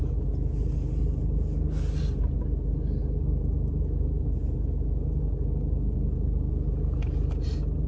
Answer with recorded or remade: recorded